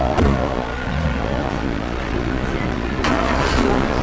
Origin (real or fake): fake